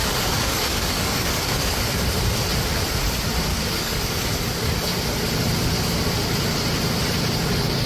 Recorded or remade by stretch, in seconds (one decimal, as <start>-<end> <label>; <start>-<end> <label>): 0.0-1.8 remade; 1.8-3.5 recorded; 3.5-4.3 remade; 4.3-7.9 recorded